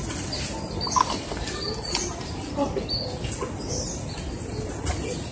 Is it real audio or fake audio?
real